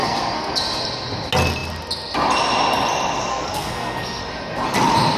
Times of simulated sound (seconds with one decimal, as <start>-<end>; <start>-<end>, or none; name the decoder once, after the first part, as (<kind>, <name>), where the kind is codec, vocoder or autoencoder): 0.0-0.5 (codec, SNAC); 3.3-4.2